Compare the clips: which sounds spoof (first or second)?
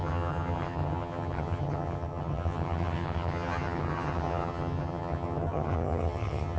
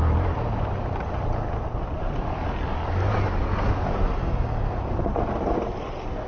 first